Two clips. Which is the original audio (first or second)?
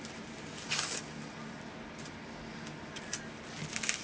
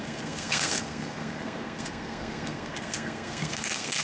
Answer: first